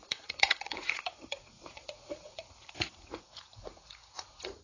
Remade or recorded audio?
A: remade